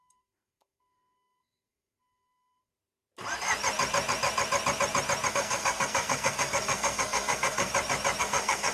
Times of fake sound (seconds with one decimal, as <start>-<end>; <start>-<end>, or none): 0.0-2.7; 5.3-7.7; 8.2-8.7